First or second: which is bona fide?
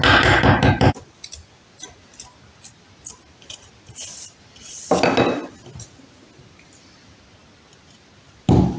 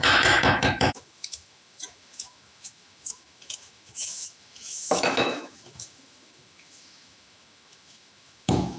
first